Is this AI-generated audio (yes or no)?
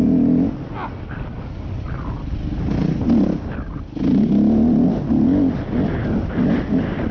no